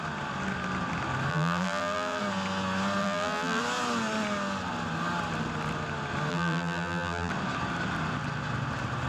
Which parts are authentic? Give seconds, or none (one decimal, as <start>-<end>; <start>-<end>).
0.0-1.3; 2.2-3.0; 3.6-6.3; 7.3-9.1